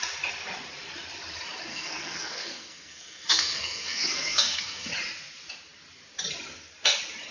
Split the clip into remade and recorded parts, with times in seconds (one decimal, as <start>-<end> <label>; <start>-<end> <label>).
0.0-1.7 recorded; 1.7-4.9 remade; 4.9-7.3 recorded